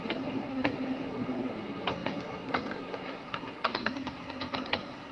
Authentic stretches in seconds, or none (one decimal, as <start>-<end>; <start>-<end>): none